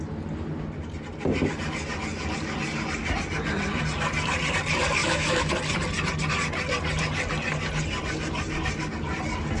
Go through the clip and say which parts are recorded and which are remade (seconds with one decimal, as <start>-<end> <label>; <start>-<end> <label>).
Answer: 0.0-5.0 recorded; 5.0-5.5 remade; 5.5-9.6 recorded